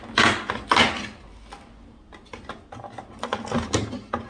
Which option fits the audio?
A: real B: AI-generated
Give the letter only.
A